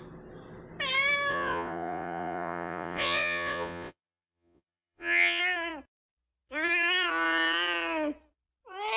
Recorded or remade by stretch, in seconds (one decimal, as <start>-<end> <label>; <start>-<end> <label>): 0.0-1.3 recorded; 1.3-5.4 remade; 5.4-9.0 recorded